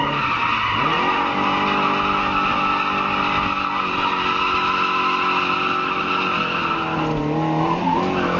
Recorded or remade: recorded